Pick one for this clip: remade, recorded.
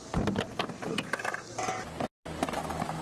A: recorded